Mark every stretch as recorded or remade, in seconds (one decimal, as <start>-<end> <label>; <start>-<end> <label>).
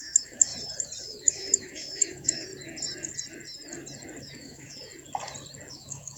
0.0-0.5 remade; 0.5-1.0 recorded; 1.0-2.5 remade; 2.5-4.2 recorded; 4.2-4.9 remade; 4.9-5.7 recorded; 5.7-6.2 remade